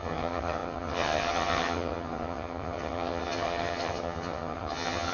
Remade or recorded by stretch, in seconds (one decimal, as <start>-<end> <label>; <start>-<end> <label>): 0.0-5.1 remade